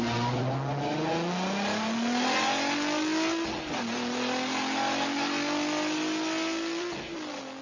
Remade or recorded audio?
recorded